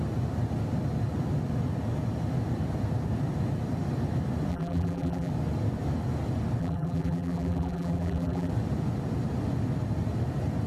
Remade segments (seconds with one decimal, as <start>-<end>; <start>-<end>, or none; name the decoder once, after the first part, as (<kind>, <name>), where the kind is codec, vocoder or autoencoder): 4.5-5.3 (vocoder, BigVGAN v2); 6.6-8.5